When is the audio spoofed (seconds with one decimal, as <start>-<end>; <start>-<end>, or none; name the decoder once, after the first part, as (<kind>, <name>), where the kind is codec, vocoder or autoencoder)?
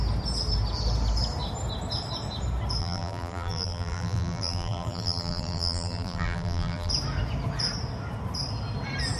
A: 2.8-6.9 (vocoder, BigVGAN v2)